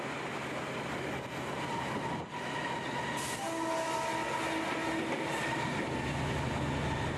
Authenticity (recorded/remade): recorded